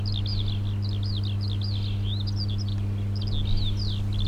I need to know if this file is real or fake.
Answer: real